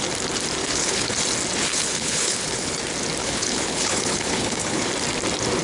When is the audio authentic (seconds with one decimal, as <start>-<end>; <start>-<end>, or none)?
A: 0.0-0.6; 1.1-1.7; 2.8-3.2; 4.9-5.6